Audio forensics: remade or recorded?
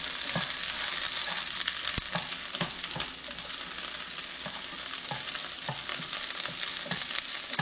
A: recorded